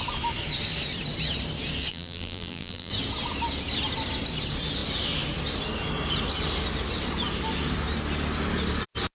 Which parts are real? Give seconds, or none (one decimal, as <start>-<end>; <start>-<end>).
0.0-1.9; 2.9-9.2